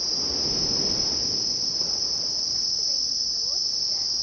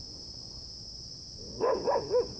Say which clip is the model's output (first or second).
second